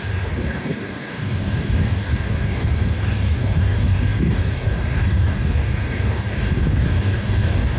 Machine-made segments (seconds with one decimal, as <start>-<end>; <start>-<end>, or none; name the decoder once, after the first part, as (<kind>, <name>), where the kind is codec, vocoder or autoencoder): 0.0-7.8 (codec, DAC)